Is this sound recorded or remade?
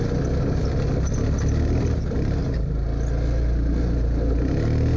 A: recorded